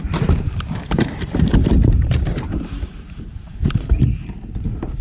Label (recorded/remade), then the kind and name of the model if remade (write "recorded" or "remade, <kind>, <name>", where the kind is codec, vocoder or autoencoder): remade, vocoder, BigVGAN v2